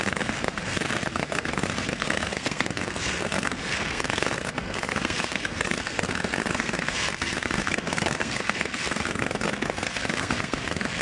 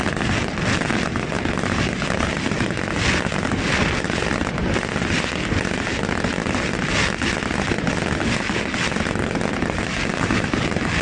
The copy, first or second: first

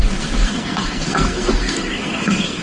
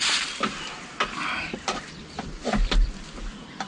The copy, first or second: first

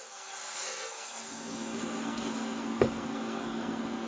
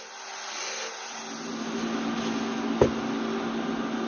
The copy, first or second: first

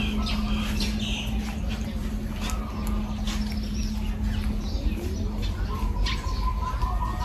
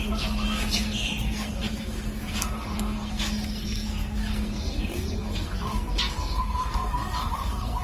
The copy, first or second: second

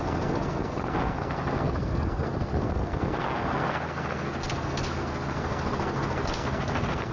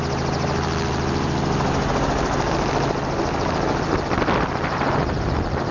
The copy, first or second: first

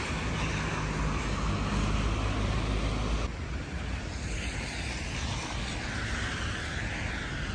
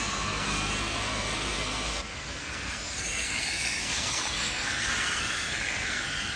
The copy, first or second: second